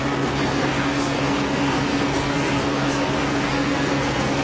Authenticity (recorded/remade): remade